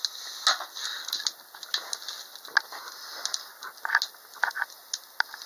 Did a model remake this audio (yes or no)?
no